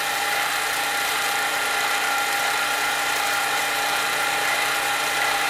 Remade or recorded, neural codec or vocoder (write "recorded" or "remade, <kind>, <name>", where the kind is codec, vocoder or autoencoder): remade, vocoder, BigVGAN v2